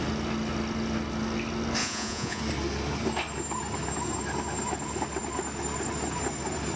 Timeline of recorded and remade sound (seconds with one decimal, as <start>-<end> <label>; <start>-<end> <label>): 0.0-1.8 recorded; 1.8-2.4 remade; 2.4-6.8 recorded